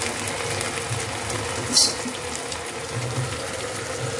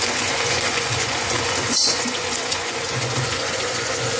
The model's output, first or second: second